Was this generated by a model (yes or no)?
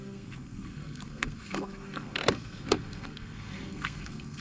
yes